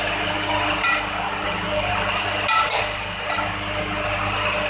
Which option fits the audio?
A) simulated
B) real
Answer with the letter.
B